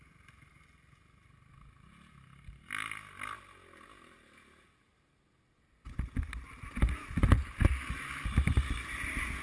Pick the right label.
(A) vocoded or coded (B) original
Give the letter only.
B